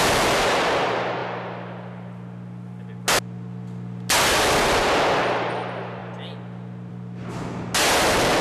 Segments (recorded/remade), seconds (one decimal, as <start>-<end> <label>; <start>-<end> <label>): 0.0-8.4 recorded

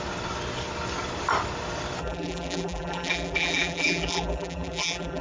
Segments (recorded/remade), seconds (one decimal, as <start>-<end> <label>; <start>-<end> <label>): 0.0-2.0 recorded; 2.0-5.2 remade

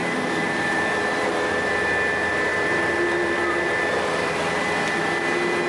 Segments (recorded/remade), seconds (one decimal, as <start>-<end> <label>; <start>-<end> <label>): 0.0-1.7 remade; 1.7-2.5 recorded; 2.5-5.0 remade; 5.0-5.7 recorded

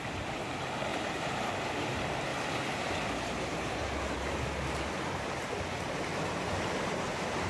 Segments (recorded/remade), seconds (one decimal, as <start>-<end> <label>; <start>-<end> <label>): 0.0-0.9 recorded; 0.9-1.5 remade; 1.5-2.3 recorded; 2.3-4.2 remade; 4.2-6.1 recorded; 6.1-7.5 remade

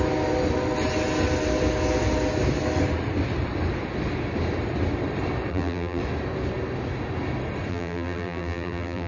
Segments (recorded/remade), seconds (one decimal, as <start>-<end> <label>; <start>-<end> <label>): 0.0-5.5 recorded; 5.5-6.0 remade; 6.0-7.7 recorded; 7.7-9.1 remade

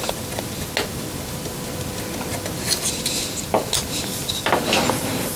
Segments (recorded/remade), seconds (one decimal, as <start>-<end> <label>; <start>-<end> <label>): 0.0-4.2 recorded; 4.2-5.4 remade